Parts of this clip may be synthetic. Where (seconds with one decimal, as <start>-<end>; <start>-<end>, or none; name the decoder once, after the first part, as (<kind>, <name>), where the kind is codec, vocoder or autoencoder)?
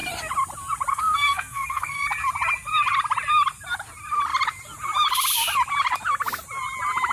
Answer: 0.9-2.0 (codec, SNAC)